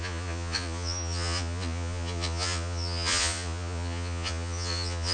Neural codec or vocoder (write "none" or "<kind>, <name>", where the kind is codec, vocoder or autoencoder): vocoder, Vocos